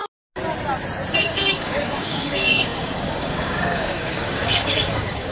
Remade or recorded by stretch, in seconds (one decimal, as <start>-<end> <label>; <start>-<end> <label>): 0.0-1.2 recorded; 1.2-5.3 remade